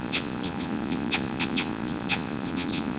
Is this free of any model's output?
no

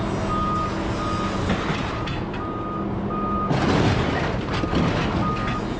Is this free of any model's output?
yes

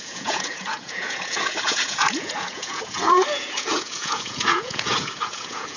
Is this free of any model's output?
no